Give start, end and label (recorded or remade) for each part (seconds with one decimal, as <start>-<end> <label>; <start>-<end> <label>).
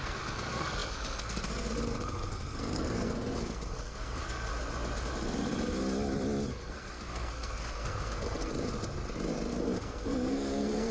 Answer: 0.0-4.5 remade; 4.5-6.5 recorded; 6.5-8.5 remade; 8.5-9.5 recorded; 9.5-10.9 remade